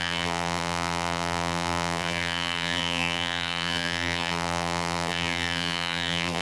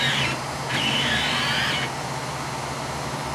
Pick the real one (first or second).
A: second